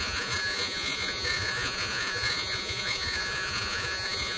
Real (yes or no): no